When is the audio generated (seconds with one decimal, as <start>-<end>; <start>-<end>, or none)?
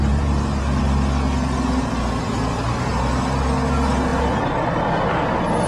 0.0-0.8